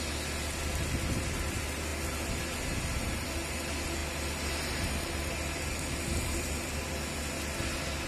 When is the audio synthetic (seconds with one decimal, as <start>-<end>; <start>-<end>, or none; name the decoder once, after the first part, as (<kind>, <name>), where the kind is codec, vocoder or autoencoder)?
none